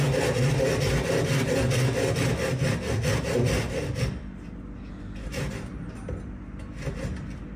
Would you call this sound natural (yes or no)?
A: yes